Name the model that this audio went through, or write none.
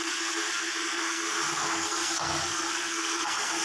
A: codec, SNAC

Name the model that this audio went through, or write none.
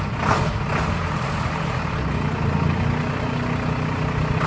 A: none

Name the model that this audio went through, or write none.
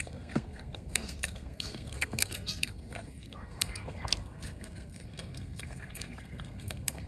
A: codec, SNAC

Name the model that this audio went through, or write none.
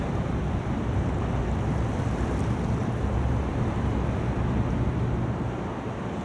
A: none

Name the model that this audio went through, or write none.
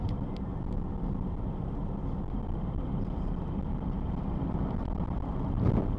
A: none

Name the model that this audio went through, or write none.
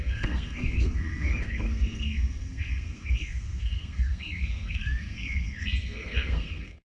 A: codec, SNAC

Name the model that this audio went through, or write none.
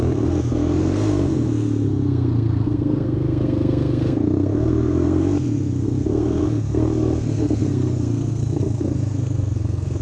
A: codec, SNAC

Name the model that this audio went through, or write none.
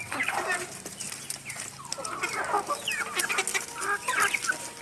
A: none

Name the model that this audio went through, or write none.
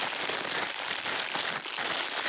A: none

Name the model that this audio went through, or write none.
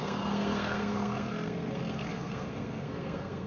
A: codec, SNAC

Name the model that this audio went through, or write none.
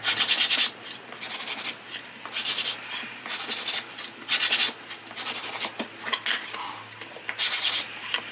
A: none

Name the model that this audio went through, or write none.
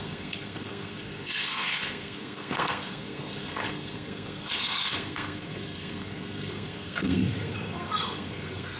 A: codec, SNAC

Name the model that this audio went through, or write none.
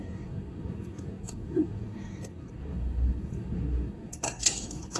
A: codec, SNAC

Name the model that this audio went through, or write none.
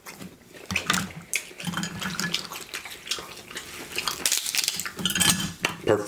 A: none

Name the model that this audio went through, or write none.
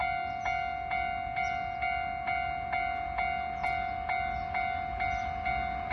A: none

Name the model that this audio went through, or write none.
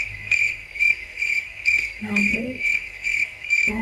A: codec, SNAC